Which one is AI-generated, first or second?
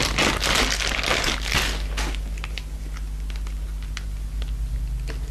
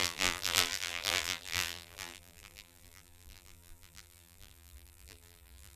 second